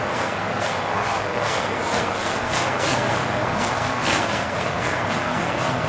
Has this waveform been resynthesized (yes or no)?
yes